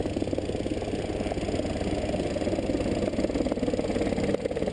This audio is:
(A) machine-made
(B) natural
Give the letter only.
B